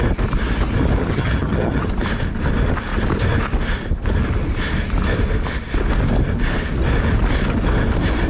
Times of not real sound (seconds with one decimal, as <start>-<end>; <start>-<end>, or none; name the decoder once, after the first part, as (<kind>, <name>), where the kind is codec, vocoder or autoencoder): 1.0-1.9 (vocoder, HiFi-GAN)